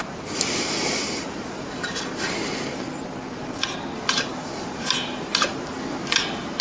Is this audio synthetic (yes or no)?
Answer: no